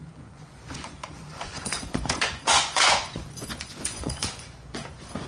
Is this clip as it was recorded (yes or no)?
no